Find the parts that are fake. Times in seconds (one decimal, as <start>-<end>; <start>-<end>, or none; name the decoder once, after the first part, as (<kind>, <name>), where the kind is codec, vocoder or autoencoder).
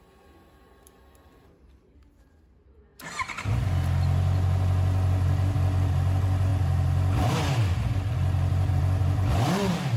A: none